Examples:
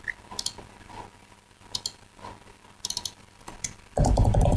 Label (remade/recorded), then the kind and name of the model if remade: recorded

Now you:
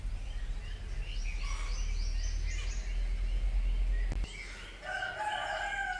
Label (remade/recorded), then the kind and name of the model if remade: recorded